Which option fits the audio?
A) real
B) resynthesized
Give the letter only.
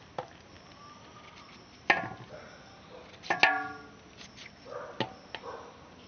A